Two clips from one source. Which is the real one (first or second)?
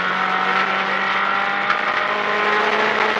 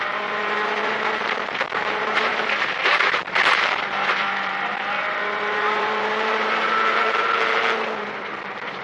first